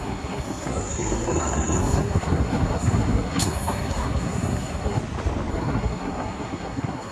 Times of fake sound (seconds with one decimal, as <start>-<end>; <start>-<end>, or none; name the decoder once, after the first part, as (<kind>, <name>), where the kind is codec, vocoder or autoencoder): 0.0-5.0 (codec, SNAC); 5.5-7.1